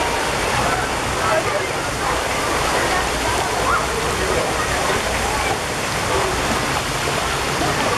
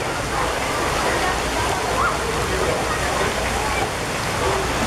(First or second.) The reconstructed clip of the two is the first